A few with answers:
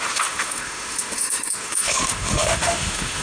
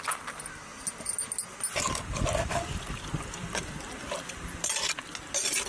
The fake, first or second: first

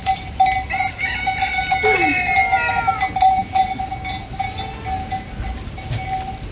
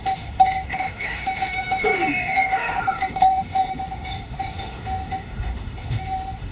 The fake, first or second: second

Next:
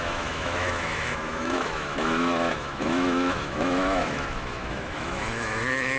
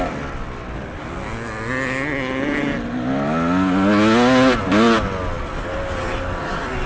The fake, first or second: first